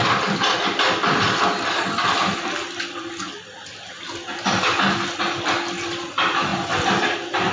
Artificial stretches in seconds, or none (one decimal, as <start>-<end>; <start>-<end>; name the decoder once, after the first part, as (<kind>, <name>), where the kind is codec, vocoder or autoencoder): none